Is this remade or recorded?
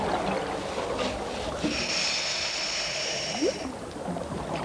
recorded